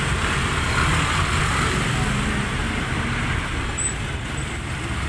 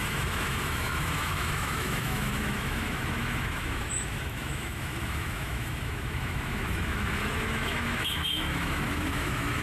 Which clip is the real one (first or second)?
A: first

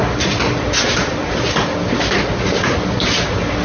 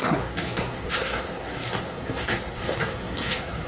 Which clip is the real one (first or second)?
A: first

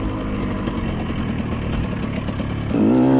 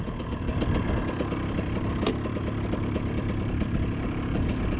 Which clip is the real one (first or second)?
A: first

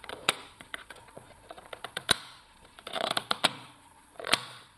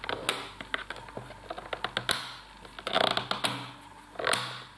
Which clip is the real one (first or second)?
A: second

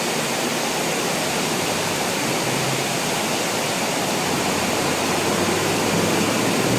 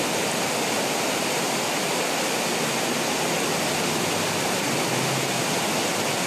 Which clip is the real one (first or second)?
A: second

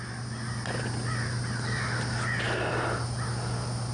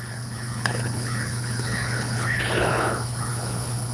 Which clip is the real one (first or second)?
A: first